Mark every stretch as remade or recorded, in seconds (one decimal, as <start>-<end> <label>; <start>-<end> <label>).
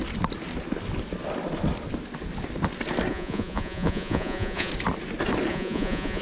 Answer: 0.0-3.1 recorded; 3.1-4.7 remade; 4.7-5.5 recorded; 5.5-6.2 remade